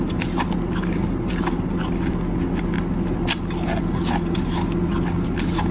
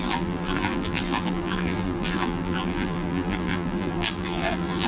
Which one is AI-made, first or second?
second